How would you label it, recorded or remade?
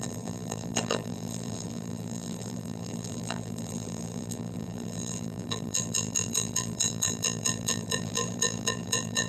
remade